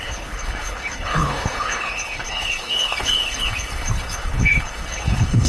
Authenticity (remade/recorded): remade